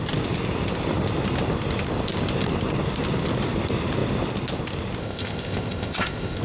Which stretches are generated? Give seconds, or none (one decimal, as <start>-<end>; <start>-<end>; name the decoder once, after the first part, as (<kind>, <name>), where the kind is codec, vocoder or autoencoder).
5.0-6.4 (codec, ZipCodec)